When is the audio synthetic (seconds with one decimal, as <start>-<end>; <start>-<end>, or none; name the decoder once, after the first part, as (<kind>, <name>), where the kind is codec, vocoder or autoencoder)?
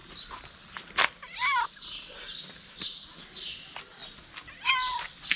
none